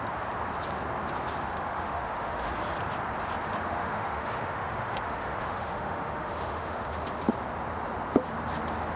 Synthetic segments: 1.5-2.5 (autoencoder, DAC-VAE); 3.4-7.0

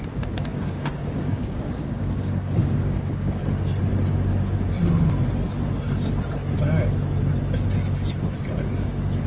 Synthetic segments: 0.5-3.4 (codec, DAC)

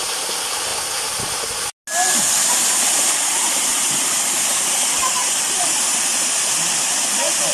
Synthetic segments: 5.2-6.3 (vocoder, BigVGAN v2)

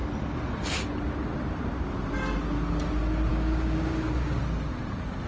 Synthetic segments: 3.3-4.4 (codec, DAC)

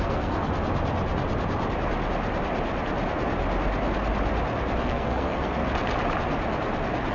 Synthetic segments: 0.0-0.5 (codec, SNAC); 4.8-5.6

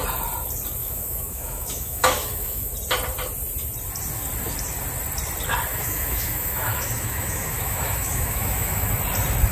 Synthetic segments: 0.8-2.7 (autoencoder, DAC-VAE); 5.7-8.9

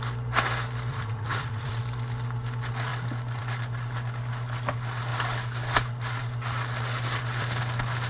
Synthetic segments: 0.9-1.8 (vocoder, Vocos)